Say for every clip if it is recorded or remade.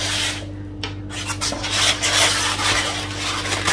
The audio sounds recorded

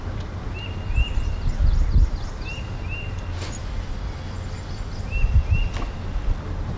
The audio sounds recorded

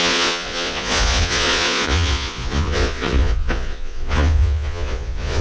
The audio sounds remade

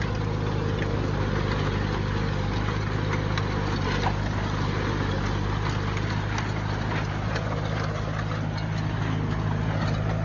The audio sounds recorded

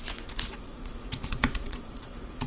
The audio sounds remade